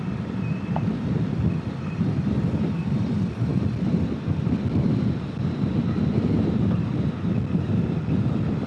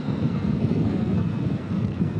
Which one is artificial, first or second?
second